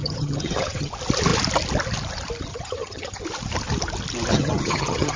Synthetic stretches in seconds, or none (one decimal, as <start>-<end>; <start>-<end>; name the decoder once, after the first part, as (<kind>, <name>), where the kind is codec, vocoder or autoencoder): 0.0-0.9 (vocoder, HiFi-GAN); 2.5-3.2; 4.3-5.2